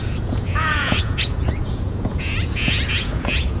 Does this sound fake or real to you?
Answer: fake